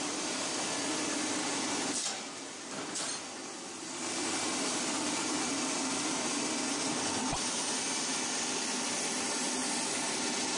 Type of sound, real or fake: real